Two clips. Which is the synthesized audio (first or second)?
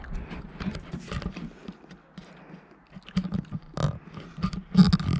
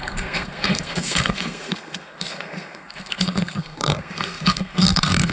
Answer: second